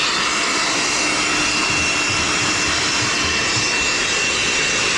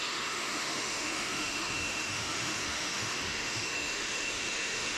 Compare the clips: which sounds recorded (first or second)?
first